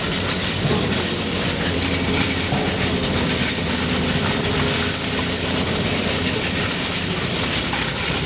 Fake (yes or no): no